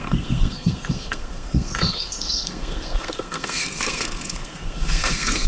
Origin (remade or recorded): remade